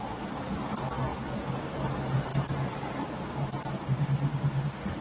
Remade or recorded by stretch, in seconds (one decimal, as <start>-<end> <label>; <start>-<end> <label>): 0.0-2.3 recorded; 2.3-5.0 remade